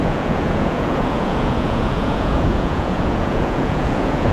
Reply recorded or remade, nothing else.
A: remade